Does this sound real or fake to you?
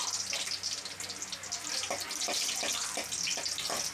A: real